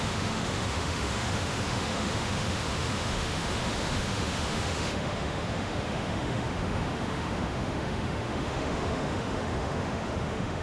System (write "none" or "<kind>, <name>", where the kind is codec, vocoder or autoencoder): autoencoder, DAC-VAE